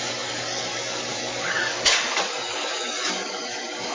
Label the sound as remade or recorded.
remade